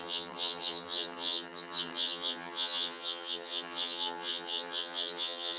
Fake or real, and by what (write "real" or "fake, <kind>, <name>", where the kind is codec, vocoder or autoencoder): fake, vocoder, HiFi-GAN